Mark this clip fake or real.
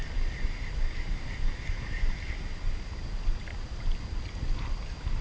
real